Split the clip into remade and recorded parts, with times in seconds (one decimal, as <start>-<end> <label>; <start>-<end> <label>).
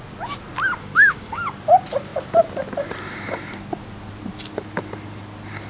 0.0-0.8 recorded; 0.8-1.4 remade; 1.4-5.7 recorded